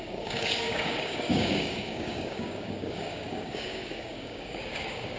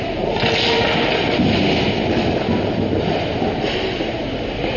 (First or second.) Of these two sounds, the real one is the second